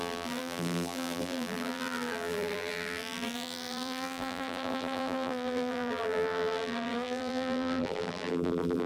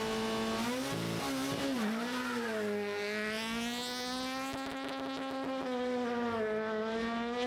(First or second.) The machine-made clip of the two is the first